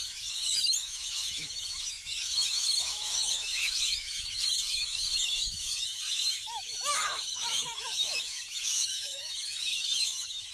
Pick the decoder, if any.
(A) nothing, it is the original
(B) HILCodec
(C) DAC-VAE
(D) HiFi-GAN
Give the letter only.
C